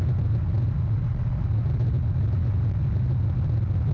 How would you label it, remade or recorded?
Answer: recorded